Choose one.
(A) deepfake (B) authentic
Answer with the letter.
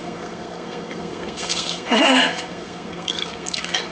A